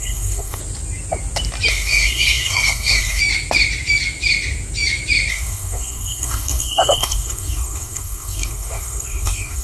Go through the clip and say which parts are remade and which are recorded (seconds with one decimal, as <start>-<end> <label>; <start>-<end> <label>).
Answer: 0.0-0.6 remade; 0.6-1.7 recorded; 1.7-3.2 remade; 3.2-5.3 recorded; 5.3-9.6 remade